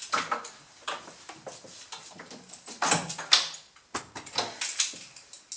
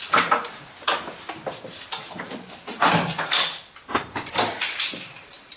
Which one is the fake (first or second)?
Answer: second